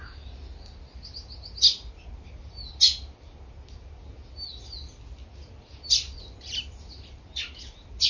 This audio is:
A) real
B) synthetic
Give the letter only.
A